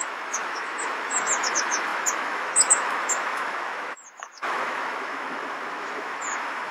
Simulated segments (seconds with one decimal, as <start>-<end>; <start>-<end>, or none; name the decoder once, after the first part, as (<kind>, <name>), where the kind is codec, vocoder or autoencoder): 0.0-6.7 (autoencoder, DAC-VAE)